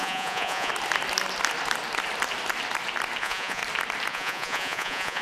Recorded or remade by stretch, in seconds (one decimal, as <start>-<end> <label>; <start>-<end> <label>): 0.0-0.7 remade; 0.7-3.2 recorded; 3.2-3.6 remade; 3.6-4.1 recorded; 4.1-5.2 remade